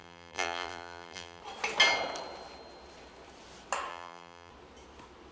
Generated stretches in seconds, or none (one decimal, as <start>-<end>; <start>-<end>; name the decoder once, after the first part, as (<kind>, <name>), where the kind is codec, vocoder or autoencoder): 0.0-1.4 (vocoder, BigVGAN v2); 3.9-4.5